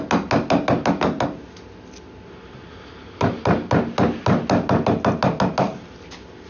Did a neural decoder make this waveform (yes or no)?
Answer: no